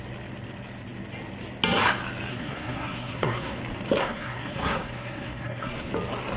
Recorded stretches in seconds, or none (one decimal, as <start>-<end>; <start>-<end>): 0.0-2.3; 3.6-4.0; 5.9-6.4